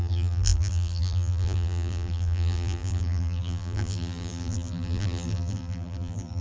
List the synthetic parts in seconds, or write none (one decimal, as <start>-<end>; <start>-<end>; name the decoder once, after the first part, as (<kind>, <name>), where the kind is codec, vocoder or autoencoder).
0.0-6.4 (vocoder, BigVGAN v2)